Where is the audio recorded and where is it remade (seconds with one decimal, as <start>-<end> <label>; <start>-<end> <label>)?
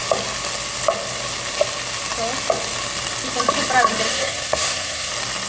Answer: 0.0-4.1 recorded; 4.1-5.1 remade; 5.1-5.5 recorded